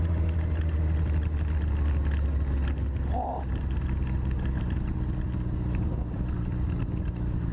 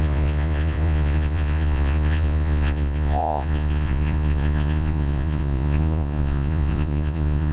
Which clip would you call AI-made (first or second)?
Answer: second